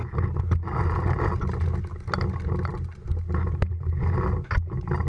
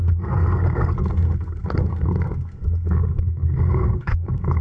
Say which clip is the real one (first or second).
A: first